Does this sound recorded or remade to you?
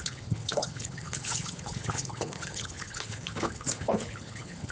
remade